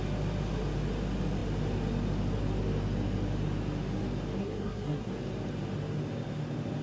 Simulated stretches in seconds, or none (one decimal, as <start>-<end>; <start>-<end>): 4.4-5.1